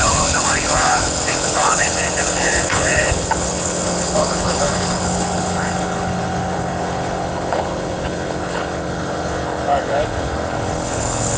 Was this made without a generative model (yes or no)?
no